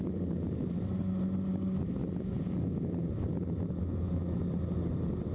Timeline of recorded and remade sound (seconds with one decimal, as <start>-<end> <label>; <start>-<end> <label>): 0.0-3.8 recorded; 3.8-4.4 remade; 4.4-5.3 recorded